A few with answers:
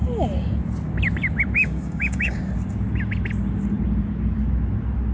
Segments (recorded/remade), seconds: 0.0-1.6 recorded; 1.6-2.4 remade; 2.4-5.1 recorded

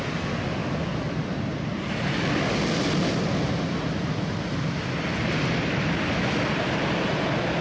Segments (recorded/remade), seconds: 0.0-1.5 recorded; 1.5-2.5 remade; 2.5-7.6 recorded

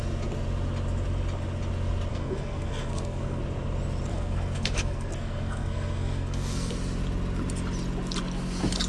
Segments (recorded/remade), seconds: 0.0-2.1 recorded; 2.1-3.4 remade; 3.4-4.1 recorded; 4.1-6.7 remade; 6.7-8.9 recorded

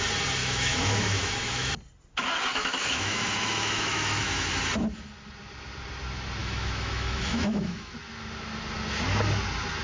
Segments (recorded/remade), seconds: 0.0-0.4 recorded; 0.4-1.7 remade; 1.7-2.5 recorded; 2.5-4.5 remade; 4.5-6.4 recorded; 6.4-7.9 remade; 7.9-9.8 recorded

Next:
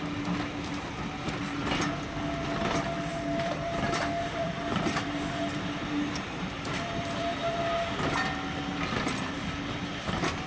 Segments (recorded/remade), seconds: 0.0-3.1 recorded; 3.1-7.6 remade; 7.6-10.5 recorded

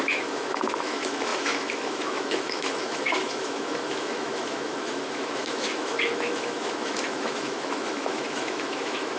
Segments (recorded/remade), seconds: 0.0-9.2 remade